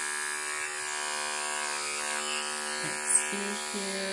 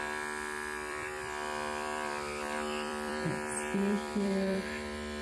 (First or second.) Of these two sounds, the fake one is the second